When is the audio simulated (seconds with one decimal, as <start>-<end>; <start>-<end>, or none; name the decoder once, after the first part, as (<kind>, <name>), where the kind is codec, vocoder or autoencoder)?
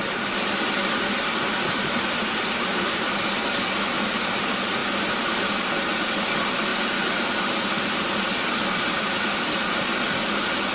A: none